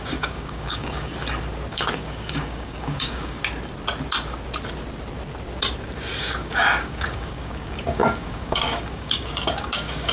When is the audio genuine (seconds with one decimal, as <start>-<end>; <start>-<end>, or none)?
1.1-1.7; 3.4-6.2